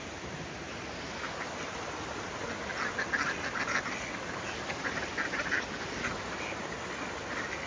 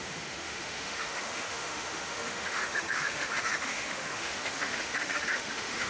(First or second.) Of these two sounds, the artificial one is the second